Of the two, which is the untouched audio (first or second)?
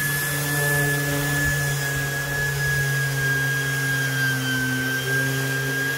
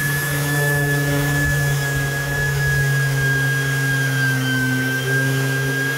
first